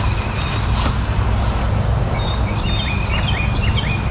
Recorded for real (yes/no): yes